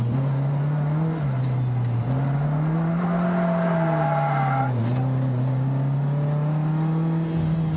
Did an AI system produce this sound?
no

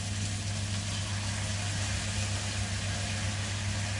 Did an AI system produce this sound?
no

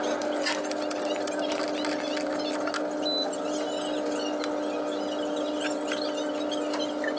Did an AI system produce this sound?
no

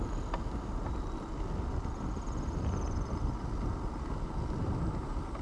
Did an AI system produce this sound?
no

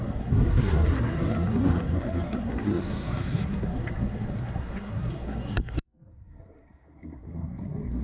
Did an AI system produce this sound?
yes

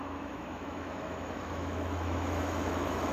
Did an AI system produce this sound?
yes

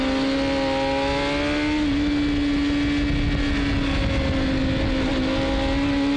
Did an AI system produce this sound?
no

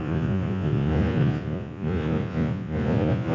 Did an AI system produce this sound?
yes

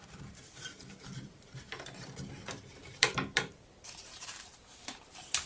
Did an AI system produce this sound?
yes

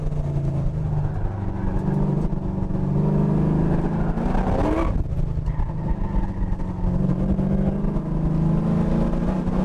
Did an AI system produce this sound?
no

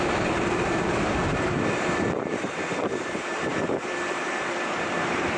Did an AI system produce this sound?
yes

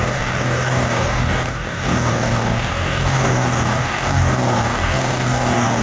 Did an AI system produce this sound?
yes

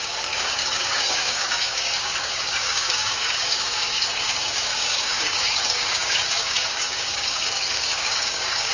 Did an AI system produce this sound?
yes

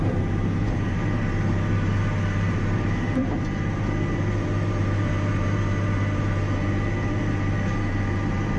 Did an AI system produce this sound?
yes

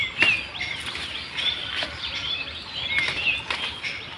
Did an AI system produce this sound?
no